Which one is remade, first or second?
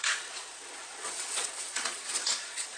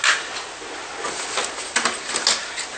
first